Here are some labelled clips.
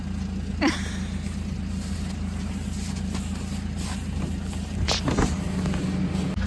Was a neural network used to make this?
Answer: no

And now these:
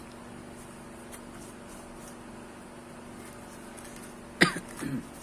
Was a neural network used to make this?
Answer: no